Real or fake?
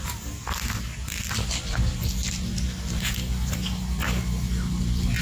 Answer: real